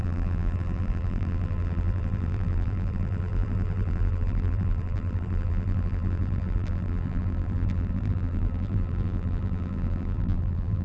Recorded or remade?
remade